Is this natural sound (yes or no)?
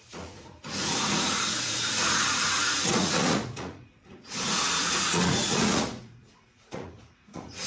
no